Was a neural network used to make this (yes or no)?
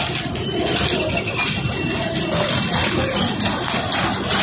no